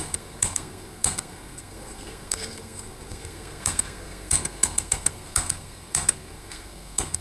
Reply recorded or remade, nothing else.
remade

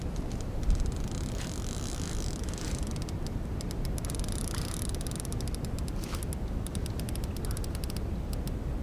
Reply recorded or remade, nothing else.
recorded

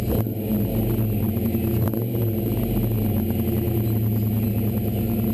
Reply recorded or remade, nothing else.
recorded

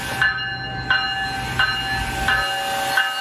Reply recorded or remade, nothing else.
recorded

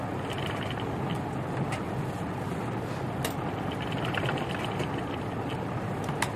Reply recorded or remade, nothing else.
recorded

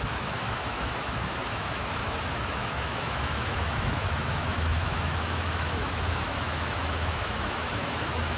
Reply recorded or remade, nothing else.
remade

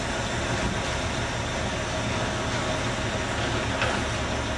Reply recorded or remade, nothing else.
recorded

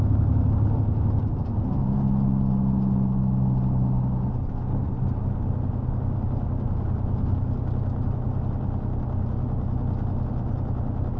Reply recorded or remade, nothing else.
recorded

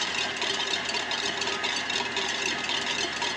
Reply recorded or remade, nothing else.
remade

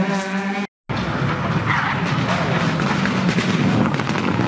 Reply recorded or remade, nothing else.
recorded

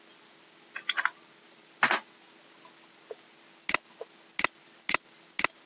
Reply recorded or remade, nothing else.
recorded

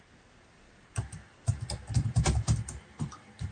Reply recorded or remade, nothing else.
remade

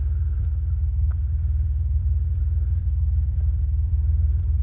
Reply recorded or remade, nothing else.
remade